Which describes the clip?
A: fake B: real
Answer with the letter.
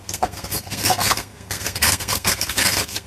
A